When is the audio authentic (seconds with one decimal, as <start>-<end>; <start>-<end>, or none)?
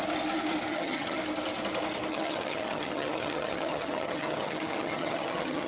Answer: 0.0-0.7; 1.2-2.1